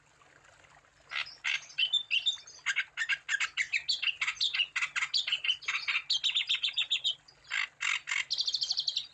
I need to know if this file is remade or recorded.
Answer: recorded